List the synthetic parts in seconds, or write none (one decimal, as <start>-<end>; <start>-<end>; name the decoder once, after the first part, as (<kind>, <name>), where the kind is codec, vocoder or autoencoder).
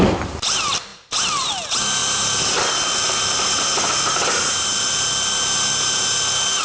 none